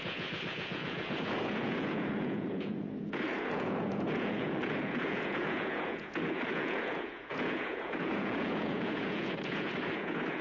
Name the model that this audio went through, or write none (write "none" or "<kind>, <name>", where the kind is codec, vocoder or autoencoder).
vocoder, Vocos